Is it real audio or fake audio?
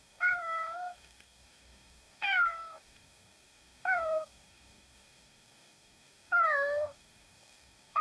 fake